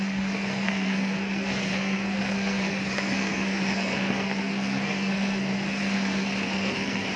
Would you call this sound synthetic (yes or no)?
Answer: yes